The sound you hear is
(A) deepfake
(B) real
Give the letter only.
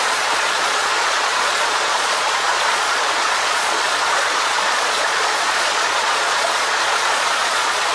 A